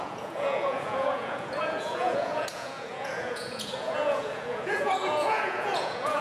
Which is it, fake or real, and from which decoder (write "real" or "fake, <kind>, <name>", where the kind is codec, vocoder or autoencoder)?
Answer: fake, vocoder, Vocos